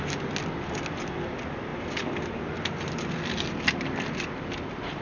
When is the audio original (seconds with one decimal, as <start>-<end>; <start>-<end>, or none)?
0.0-5.0